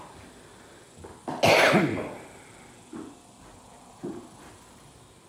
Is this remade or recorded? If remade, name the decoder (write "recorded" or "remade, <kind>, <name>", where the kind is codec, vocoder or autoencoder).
recorded